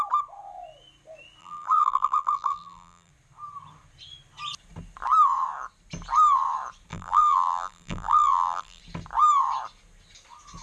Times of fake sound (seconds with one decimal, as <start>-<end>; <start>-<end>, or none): 1.4-3.1; 6.9-8.8